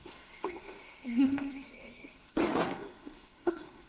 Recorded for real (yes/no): no